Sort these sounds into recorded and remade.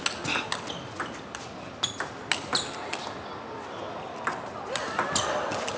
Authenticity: recorded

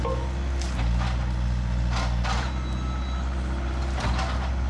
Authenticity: recorded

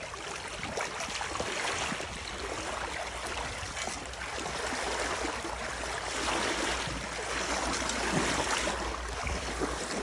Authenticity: recorded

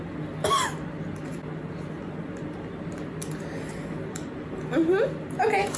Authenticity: recorded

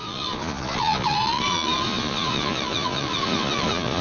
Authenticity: remade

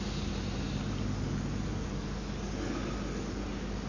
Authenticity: recorded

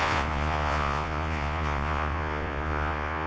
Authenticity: remade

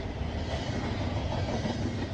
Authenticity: recorded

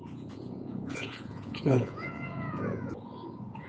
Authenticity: remade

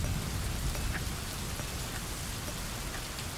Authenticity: recorded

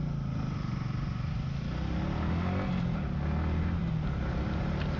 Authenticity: recorded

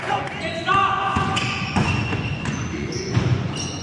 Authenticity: remade